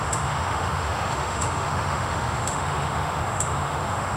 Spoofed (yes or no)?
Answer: yes